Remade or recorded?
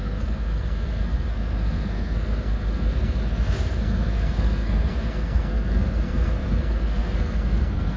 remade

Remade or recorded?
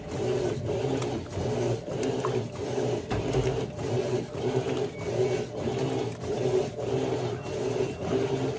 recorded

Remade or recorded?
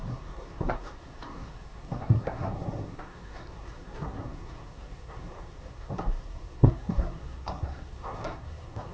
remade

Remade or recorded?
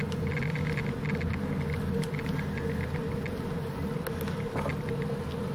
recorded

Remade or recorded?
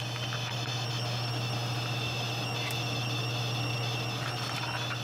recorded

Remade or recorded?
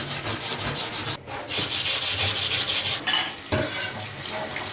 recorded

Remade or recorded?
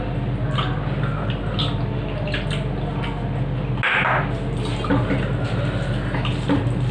recorded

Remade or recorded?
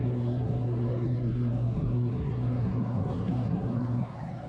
remade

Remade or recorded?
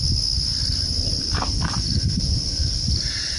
recorded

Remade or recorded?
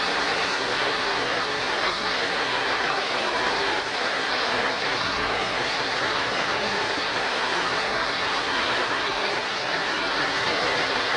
remade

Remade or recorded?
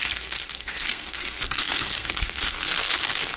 remade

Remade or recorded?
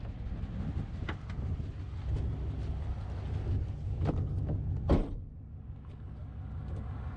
recorded